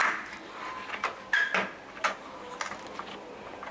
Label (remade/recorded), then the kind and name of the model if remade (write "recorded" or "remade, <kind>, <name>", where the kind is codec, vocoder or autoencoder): recorded